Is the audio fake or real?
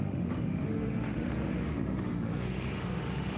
fake